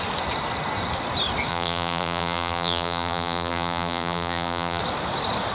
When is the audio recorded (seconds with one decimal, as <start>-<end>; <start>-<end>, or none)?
0.0-1.5; 4.8-5.5